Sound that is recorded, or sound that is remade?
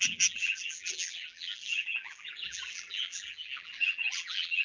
remade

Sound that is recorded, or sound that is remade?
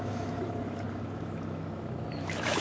remade